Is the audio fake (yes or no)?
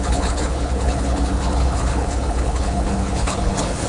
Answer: yes